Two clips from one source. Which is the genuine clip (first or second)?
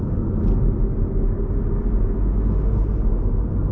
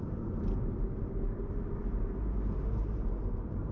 first